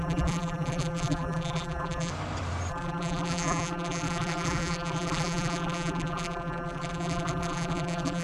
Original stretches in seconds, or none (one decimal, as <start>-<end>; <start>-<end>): 2.1-2.7